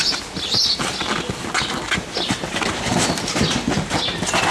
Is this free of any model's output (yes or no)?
yes